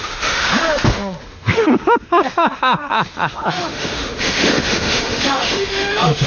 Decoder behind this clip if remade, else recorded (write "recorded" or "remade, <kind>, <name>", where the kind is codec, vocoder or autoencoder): remade, autoencoder, DAC-VAE